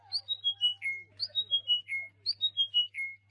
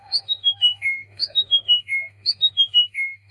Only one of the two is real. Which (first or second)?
first